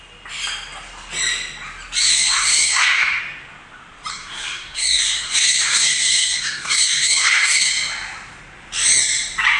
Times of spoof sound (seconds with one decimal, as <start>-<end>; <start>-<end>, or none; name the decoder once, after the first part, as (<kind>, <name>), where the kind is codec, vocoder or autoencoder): 2.0-3.2 (codec, SNAC); 4.1-7.7